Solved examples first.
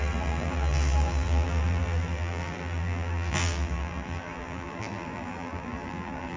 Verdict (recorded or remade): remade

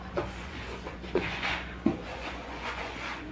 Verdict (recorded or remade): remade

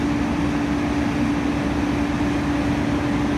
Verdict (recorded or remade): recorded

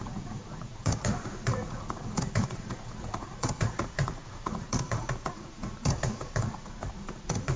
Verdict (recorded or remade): remade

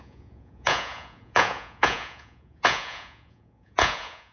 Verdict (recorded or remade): remade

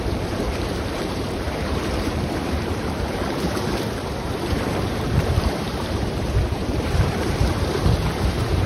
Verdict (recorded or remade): remade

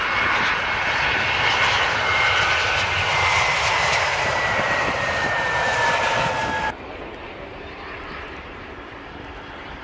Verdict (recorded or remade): remade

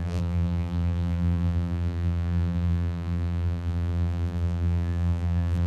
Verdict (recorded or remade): remade